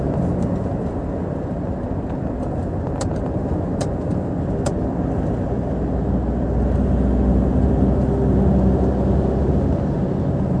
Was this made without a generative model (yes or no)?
yes